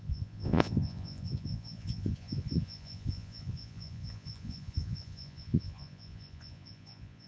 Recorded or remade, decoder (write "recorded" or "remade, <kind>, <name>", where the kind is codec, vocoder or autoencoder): remade, vocoder, Vocos